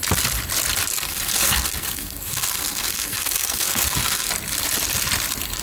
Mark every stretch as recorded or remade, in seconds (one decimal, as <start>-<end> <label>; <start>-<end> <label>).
0.0-0.9 recorded; 0.9-4.3 remade; 4.3-5.6 recorded